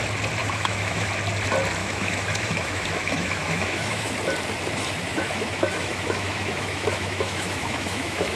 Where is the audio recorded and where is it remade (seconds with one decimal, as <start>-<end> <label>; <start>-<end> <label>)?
0.0-0.4 recorded; 0.4-1.1 remade; 1.1-1.8 recorded; 1.8-4.1 remade; 4.1-5.1 recorded; 5.1-8.4 remade